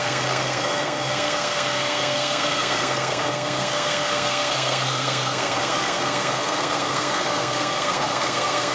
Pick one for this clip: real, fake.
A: fake